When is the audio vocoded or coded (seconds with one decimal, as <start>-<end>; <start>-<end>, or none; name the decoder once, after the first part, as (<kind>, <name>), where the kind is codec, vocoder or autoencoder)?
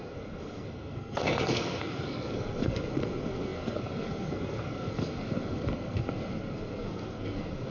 0.0-7.7 (codec, SNAC)